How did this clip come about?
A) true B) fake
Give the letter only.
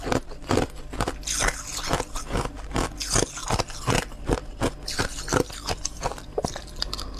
A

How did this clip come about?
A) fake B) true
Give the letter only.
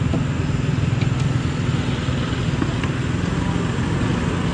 B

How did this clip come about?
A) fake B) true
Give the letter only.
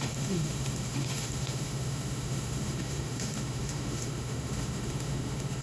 A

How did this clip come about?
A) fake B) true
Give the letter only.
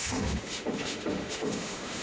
A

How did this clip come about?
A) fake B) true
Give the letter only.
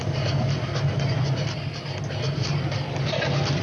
B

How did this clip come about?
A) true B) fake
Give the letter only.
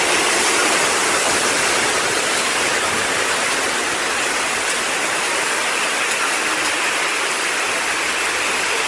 A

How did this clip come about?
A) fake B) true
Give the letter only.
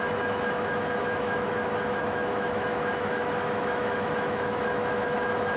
A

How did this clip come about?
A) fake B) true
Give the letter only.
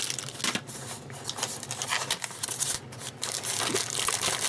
B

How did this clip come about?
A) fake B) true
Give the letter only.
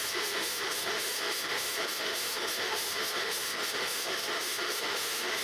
A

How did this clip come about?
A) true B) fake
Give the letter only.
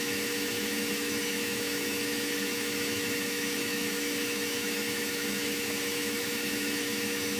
B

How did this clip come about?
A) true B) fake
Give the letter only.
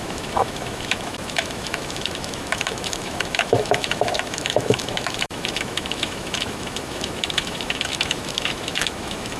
B